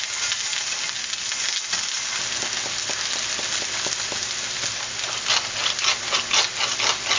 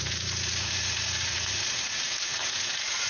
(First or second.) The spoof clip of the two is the second